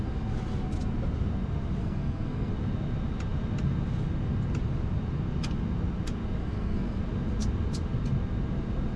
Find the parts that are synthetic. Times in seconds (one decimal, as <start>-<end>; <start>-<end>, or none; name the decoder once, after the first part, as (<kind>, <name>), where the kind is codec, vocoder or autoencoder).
1.8-2.5 (codec, SNAC); 6.4-7.0